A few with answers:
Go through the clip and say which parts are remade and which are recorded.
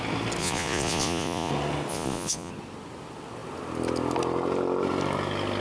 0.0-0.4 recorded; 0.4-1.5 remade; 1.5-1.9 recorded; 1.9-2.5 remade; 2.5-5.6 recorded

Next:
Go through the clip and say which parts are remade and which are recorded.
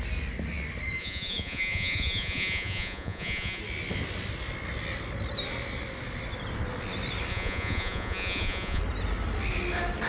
0.0-1.0 recorded; 1.0-3.6 remade; 3.6-7.3 recorded; 7.3-8.8 remade; 8.8-10.1 recorded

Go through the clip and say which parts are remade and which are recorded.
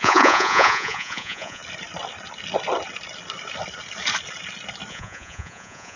0.0-1.6 remade; 1.6-4.9 recorded; 4.9-6.0 remade